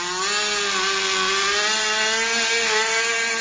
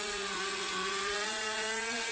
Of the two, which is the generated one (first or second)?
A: second